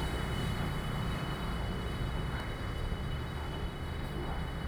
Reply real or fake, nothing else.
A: fake